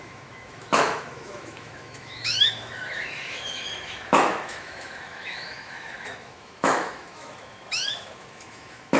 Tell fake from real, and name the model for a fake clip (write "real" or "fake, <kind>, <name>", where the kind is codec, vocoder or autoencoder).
fake, autoencoder, DAC-VAE